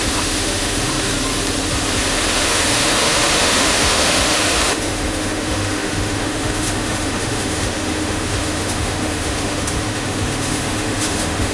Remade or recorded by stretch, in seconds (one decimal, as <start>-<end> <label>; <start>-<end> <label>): 0.0-1.1 remade; 1.1-2.1 recorded; 2.1-11.5 remade